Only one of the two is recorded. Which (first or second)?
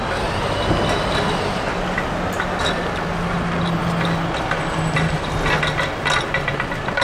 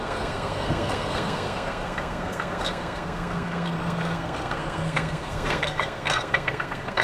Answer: first